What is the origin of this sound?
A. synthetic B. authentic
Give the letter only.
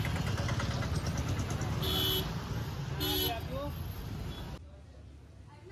B